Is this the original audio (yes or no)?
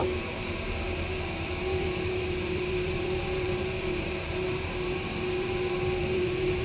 no